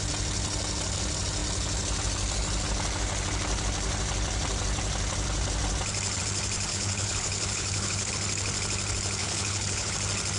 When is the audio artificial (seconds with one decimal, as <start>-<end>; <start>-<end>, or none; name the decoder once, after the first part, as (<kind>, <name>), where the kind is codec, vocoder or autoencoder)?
6.7-8.1 (codec, HILCodec); 9.2-9.9

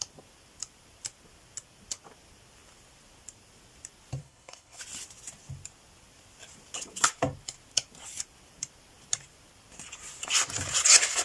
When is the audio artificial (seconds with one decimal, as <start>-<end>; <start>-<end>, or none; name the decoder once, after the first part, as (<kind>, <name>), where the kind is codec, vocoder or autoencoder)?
4.2-4.8 (codec, HILCodec)

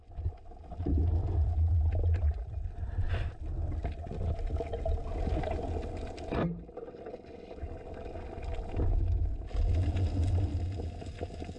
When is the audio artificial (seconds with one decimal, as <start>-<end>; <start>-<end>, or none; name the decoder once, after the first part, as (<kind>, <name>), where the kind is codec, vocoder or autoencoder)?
none

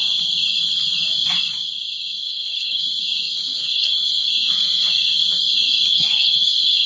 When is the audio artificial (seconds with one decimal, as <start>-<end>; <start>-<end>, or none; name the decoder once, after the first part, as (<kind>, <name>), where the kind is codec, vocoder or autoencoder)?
2.2-2.8 (codec, HILCodec); 3.5-4.3; 5.9-6.9

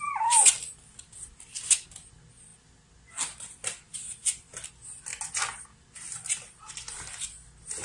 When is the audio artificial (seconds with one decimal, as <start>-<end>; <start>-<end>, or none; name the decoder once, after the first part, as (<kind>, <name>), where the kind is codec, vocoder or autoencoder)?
none

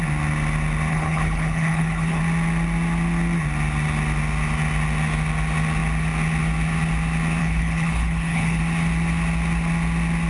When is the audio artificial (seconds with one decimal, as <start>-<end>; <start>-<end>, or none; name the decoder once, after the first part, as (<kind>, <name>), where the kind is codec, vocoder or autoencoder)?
0.9-2.2 (codec, HILCodec); 7.4-8.6

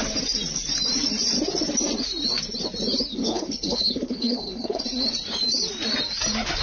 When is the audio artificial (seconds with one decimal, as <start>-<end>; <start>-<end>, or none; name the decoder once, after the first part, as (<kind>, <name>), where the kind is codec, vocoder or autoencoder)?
3.1-4.8 (codec, HILCodec)

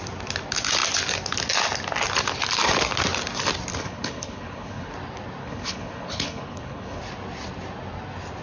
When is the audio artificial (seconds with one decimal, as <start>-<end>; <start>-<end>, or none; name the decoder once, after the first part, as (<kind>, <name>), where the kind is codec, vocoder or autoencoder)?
3.7-4.9 (codec, HILCodec); 5.4-7.0